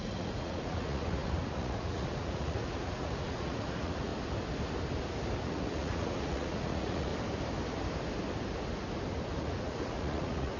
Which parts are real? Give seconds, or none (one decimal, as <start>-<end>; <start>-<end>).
4.1-5.4; 7.1-9.4